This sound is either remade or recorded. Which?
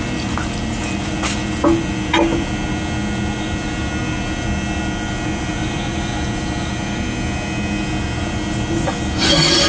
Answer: recorded